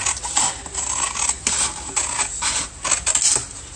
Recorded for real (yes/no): yes